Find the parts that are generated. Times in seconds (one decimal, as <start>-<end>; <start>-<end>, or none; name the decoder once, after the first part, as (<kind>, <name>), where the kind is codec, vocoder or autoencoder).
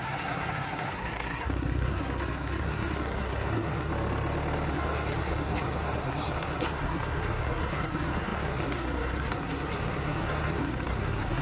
0.0-3.9 (codec, SNAC); 4.7-11.4